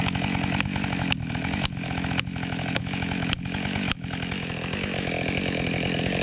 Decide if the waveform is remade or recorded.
remade